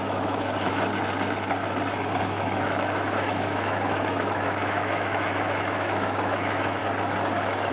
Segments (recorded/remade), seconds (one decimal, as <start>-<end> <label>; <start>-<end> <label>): 0.0-0.9 remade; 0.9-2.2 recorded; 2.2-6.8 remade; 6.8-7.7 recorded